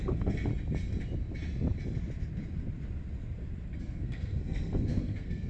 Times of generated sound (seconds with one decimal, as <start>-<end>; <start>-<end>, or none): 0.0-0.5; 3.8-5.5